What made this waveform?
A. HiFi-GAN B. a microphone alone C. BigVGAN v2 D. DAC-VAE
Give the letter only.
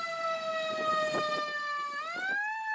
B